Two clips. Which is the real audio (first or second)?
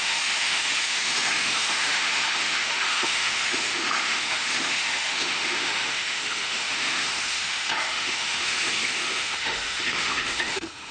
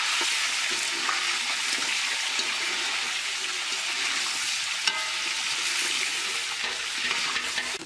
second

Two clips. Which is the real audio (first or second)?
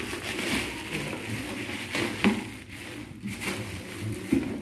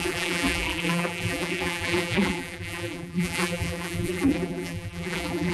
first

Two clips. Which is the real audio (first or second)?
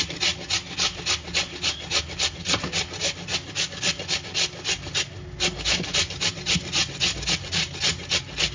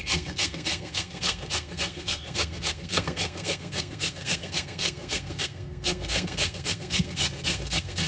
first